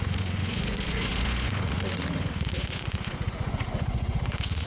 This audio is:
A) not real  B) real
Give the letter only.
A